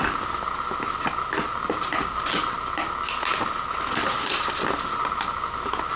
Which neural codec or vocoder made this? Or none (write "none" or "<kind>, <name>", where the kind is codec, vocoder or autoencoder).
none